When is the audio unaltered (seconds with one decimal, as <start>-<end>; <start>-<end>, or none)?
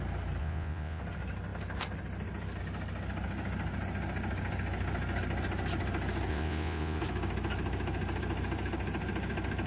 0.0-0.4; 1.0-6.3; 7.0-9.7